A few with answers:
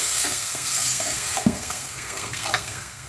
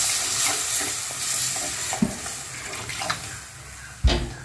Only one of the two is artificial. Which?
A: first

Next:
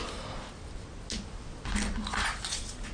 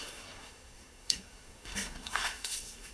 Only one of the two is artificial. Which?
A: second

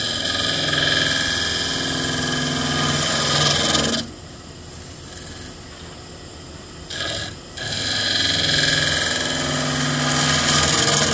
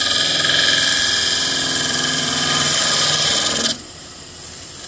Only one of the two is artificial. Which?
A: second